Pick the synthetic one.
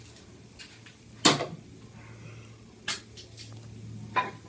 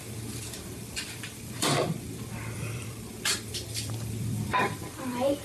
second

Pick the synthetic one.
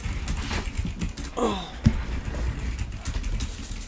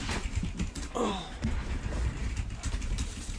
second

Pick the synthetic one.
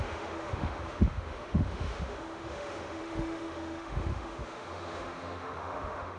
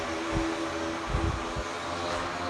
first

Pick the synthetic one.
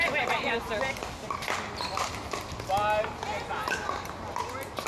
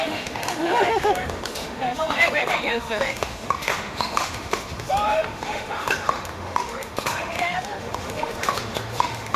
second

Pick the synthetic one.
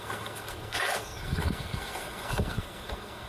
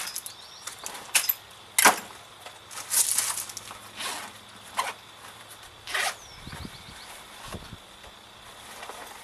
first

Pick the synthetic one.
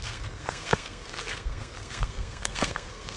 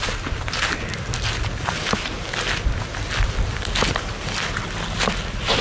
first